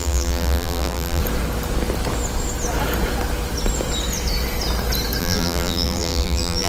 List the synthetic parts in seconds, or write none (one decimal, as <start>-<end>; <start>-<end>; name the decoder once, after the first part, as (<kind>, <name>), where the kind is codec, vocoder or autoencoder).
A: 0.0-1.2 (vocoder, BigVGAN v2); 5.2-6.7